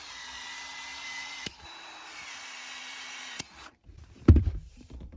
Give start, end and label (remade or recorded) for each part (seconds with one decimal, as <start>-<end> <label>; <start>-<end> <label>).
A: 0.0-5.2 remade